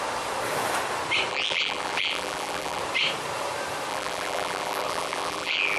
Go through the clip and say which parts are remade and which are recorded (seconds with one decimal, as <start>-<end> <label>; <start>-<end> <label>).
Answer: 0.0-1.3 recorded; 1.3-2.8 remade; 2.8-3.9 recorded; 3.9-5.8 remade